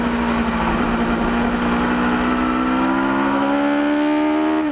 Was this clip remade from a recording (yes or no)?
no